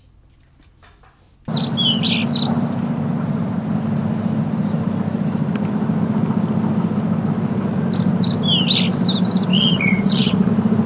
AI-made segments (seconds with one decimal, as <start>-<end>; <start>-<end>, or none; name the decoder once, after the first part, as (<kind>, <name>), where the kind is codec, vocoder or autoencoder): 9.5-10.5 (vocoder, Vocos)